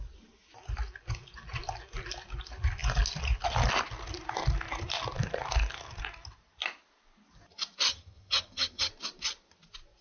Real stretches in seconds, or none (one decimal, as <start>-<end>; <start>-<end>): 0.0-7.9; 8.9-10.0